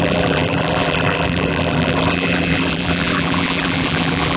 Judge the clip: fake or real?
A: fake